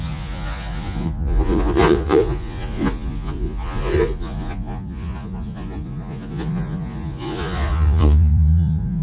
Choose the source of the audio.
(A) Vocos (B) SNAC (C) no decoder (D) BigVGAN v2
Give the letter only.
A